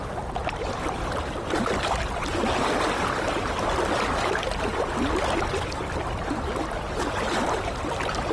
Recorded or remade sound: recorded